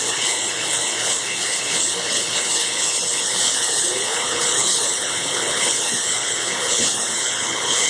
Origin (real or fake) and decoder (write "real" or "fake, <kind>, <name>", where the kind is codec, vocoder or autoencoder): fake, codec, HILCodec